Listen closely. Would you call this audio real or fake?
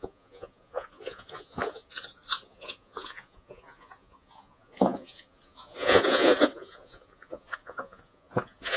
fake